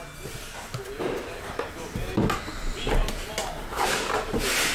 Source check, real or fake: real